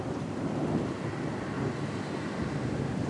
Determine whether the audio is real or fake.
real